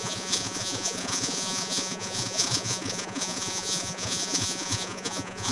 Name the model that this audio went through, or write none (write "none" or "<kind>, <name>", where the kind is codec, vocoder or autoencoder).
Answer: vocoder, Vocos